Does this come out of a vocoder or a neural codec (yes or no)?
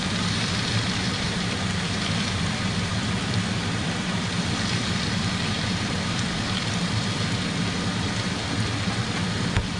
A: yes